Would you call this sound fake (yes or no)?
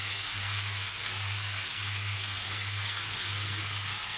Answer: yes